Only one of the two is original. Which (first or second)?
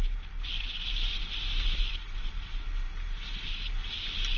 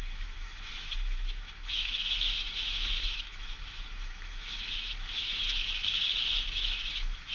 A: first